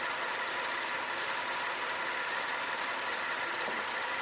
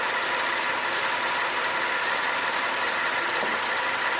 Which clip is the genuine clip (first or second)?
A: second